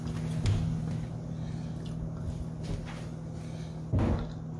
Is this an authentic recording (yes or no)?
yes